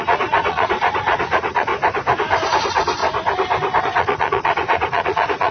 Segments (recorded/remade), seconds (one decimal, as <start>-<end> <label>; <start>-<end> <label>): 0.0-1.7 remade; 1.7-2.5 recorded; 2.5-3.0 remade; 3.0-3.8 recorded; 3.8-5.5 remade